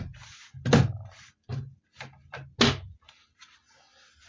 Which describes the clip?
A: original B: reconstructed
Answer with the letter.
A